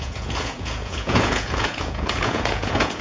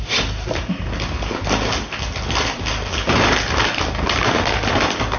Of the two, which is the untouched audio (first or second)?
second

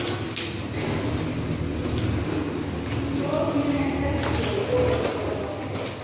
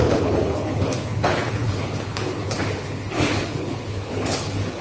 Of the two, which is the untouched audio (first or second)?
first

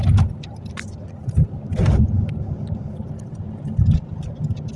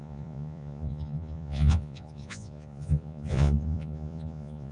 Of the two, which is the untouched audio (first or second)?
first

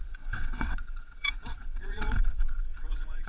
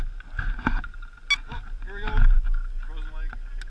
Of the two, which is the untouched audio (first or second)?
second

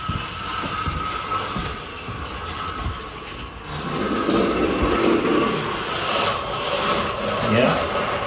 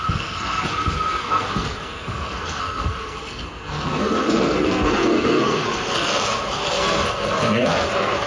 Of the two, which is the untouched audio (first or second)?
first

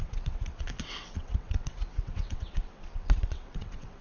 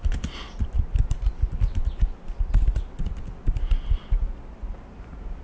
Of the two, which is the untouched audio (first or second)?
second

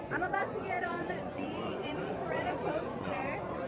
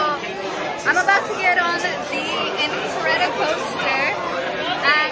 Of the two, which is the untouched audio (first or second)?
second